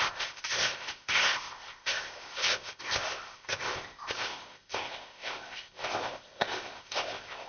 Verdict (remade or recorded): remade